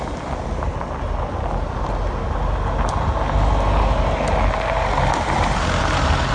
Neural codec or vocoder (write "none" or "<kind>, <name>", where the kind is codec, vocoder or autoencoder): none